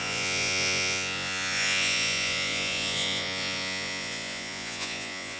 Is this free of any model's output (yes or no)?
no